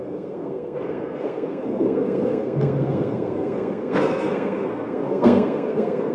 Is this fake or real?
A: fake